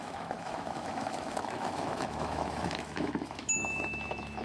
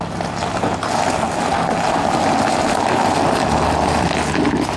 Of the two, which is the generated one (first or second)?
first